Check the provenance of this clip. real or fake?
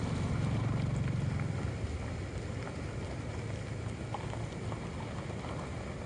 real